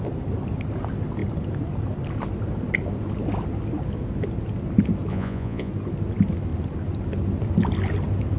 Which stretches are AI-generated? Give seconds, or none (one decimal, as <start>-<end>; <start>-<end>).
5.1-5.7